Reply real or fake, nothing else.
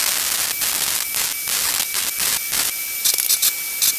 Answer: real